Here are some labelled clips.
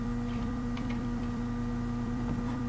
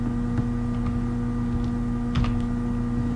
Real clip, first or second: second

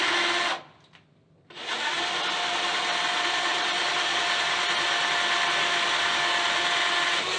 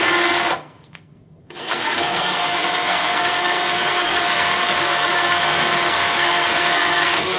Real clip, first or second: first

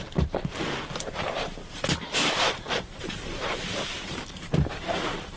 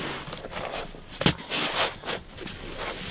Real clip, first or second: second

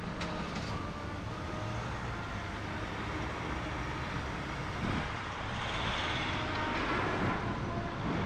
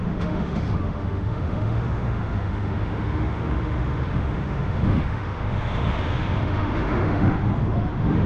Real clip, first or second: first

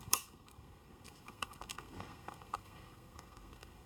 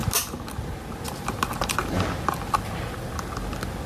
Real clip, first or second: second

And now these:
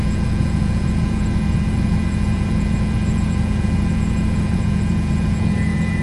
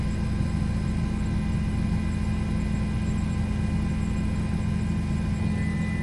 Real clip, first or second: second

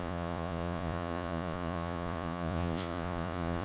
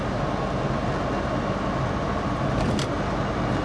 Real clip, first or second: second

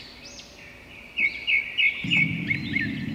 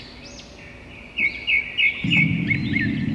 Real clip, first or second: second